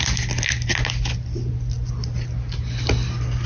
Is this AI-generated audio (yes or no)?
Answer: no